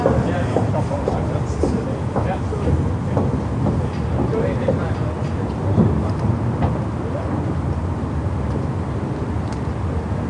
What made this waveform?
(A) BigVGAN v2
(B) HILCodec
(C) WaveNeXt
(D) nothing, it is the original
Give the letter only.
D